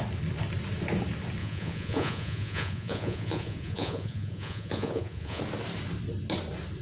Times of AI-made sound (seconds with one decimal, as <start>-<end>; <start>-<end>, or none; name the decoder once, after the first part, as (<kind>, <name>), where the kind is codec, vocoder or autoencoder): 1.4-5.4 (vocoder, Vocos)